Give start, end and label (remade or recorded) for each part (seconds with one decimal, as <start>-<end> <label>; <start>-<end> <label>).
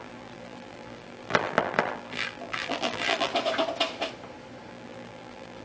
0.0-3.3 remade; 3.3-4.7 recorded; 4.7-5.6 remade